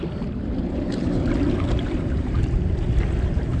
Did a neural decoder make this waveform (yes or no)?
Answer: no